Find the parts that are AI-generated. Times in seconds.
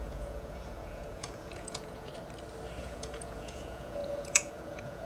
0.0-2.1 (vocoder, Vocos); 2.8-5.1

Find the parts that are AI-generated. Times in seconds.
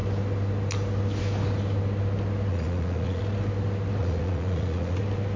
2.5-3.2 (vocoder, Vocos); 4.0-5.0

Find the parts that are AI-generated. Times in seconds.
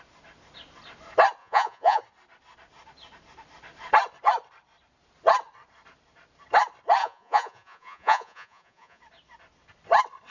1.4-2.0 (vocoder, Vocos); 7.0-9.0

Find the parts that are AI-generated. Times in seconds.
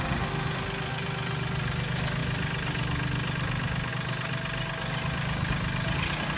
none